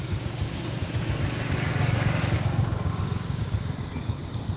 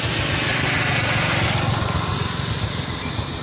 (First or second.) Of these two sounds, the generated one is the first